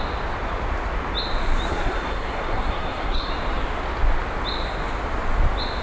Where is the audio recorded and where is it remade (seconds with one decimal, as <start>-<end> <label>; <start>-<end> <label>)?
0.0-1.7 recorded; 1.7-3.3 remade; 3.3-5.8 recorded